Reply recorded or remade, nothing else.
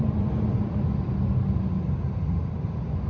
recorded